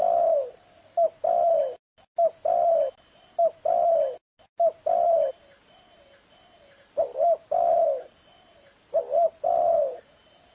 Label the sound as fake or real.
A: real